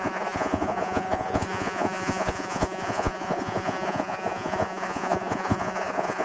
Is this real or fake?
fake